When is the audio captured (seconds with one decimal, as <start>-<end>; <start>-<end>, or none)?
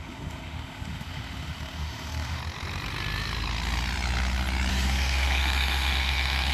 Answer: 2.4-4.7